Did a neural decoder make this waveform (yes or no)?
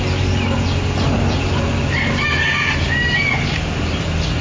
no